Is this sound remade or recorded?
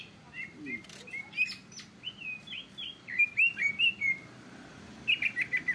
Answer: recorded